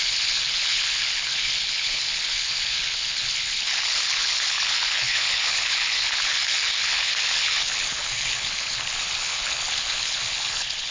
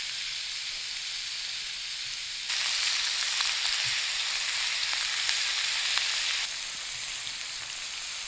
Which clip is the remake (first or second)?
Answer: first